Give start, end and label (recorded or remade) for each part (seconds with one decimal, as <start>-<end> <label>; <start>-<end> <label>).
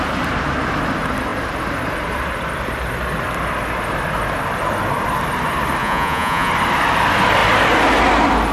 0.0-5.8 recorded; 5.8-6.5 remade; 6.5-8.5 recorded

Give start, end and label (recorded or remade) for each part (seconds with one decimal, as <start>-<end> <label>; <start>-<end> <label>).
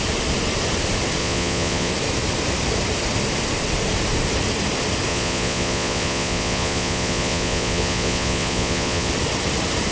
0.0-1.2 recorded; 1.2-1.9 remade; 1.9-5.1 recorded; 5.1-9.1 remade; 9.1-9.9 recorded